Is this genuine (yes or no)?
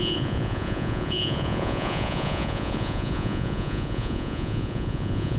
no